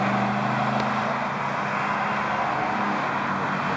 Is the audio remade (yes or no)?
no